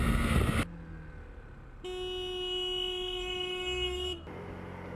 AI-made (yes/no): no